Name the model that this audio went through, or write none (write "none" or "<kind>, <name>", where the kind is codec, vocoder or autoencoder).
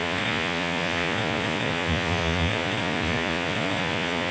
vocoder, Vocos